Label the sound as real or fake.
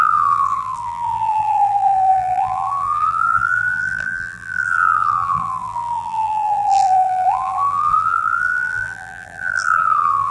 fake